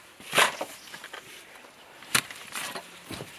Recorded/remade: remade